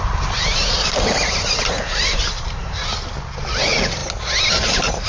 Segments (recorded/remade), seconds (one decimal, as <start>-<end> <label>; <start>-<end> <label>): 0.0-2.8 remade; 2.8-3.6 recorded; 3.6-4.0 remade; 4.0-4.5 recorded; 4.5-5.1 remade